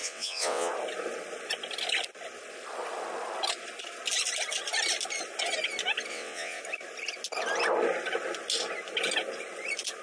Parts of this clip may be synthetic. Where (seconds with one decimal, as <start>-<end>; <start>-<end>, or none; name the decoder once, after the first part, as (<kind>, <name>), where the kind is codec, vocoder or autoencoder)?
0.0-0.7 (vocoder, WaveNeXt); 6.1-6.6